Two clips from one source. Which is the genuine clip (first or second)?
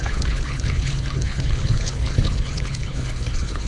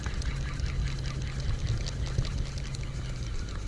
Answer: second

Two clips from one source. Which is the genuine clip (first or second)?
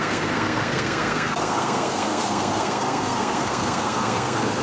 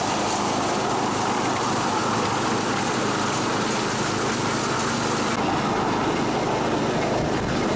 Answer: second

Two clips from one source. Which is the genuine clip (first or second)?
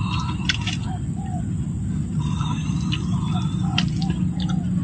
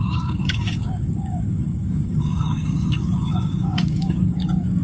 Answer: first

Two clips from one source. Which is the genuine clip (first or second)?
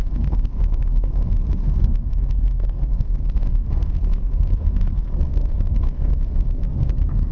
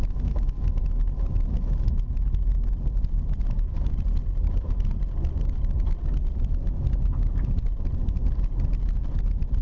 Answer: second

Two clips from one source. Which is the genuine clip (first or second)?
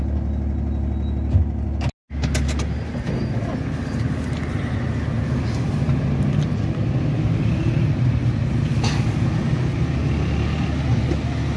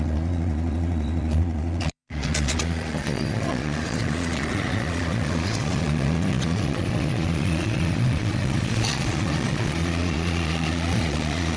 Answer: first